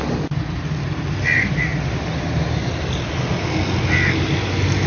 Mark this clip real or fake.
real